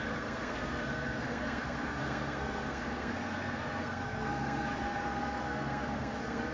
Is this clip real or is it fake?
fake